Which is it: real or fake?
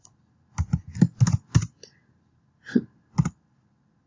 real